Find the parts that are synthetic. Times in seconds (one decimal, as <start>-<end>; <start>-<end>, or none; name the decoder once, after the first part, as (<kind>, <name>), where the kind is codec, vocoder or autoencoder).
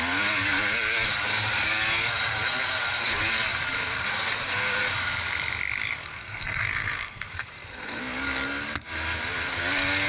6.0-8.0 (codec, SNAC)